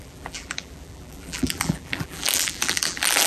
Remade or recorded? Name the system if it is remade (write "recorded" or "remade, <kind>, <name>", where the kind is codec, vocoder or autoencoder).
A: remade, vocoder, BigVGAN v2